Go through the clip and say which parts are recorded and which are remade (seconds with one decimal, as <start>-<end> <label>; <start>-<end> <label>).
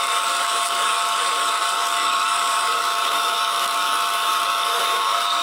0.0-5.4 remade